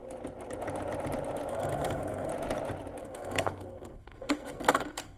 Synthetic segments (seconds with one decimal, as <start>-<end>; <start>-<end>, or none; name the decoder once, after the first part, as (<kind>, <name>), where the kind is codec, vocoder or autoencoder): 1.5-2.3 (codec, SNAC); 3.0-5.2